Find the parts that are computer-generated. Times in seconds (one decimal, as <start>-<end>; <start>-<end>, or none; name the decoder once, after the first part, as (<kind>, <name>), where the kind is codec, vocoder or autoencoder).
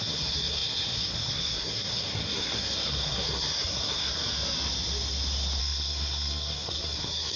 0.0-4.2 (codec, SNAC); 5.6-7.4